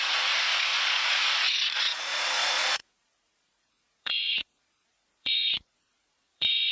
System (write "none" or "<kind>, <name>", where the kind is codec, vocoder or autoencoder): vocoder, Vocos